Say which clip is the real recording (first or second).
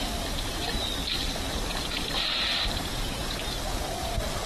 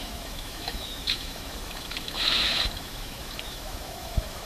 first